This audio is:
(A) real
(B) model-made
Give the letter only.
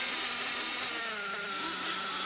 A